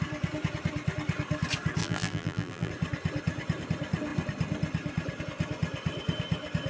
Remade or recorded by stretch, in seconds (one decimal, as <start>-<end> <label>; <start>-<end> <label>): 0.0-1.8 recorded; 1.8-2.7 remade; 2.7-6.7 recorded